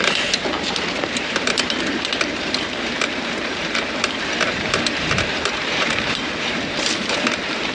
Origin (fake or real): fake